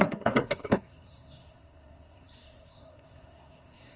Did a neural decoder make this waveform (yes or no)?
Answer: yes